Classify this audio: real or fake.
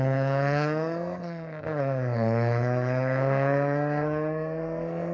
fake